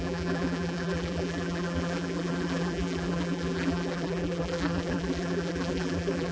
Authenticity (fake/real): fake